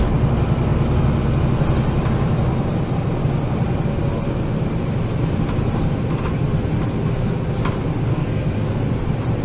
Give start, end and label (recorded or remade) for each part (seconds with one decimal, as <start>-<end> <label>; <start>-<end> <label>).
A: 0.0-8.1 recorded; 8.1-8.8 remade; 8.8-9.4 recorded